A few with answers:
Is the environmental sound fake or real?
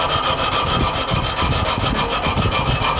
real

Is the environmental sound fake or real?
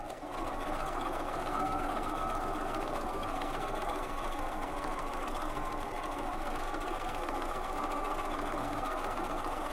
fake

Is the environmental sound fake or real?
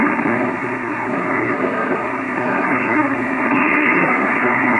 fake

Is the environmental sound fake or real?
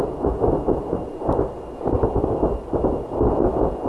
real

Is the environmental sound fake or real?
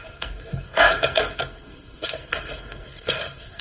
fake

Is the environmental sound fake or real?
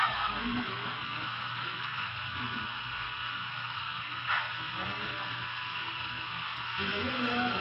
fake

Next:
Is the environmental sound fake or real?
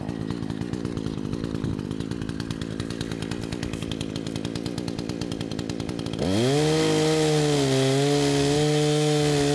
real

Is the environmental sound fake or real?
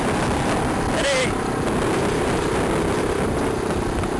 real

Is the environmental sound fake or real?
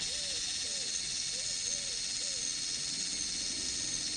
real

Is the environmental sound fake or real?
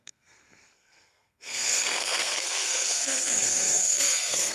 fake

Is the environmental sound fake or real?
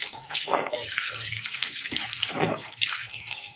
fake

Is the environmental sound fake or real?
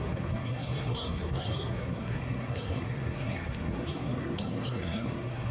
fake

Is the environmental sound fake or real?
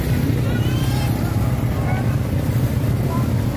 real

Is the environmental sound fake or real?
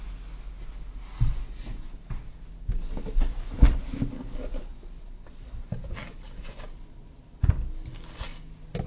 real